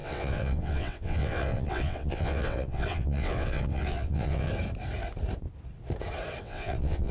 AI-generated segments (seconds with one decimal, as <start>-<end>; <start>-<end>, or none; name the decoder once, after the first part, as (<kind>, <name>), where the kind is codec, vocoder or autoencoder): 0.0-4.5 (vocoder, WaveNeXt); 6.4-7.1